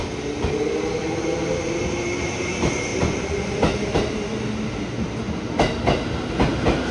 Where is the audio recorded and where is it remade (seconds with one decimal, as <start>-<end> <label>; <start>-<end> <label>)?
0.0-2.9 recorded; 2.9-3.5 remade; 3.5-6.9 recorded